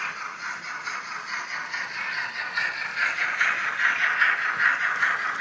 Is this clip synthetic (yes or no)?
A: no